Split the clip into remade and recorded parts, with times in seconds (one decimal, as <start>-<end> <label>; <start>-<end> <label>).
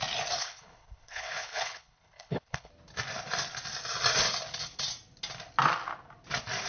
0.0-0.4 recorded; 0.4-2.7 remade; 2.7-6.7 recorded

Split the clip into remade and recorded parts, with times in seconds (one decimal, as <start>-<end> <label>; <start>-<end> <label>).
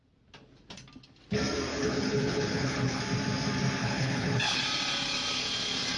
0.0-1.7 recorded; 1.7-3.0 remade; 3.0-3.8 recorded; 3.8-4.6 remade; 4.6-6.0 recorded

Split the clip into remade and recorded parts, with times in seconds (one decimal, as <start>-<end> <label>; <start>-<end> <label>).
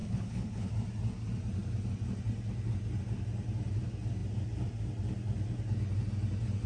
0.0-0.7 remade; 0.7-6.7 recorded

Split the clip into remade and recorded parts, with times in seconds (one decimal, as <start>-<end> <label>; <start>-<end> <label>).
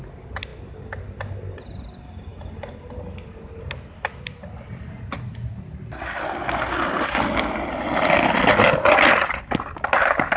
0.0-10.4 recorded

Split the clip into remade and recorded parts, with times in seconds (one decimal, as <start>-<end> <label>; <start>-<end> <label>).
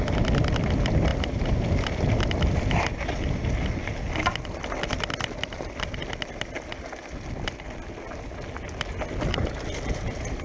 0.0-10.4 recorded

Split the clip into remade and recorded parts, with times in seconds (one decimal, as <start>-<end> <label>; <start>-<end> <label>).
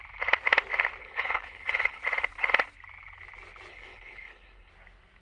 0.0-1.0 recorded; 1.0-2.0 remade; 2.0-3.7 recorded; 3.7-4.7 remade; 4.7-5.2 recorded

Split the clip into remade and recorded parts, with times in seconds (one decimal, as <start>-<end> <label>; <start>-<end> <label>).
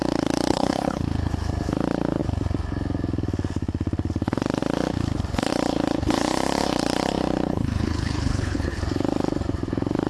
0.0-0.5 recorded; 0.5-1.0 remade; 1.0-7.5 recorded; 7.5-8.8 remade; 8.8-10.1 recorded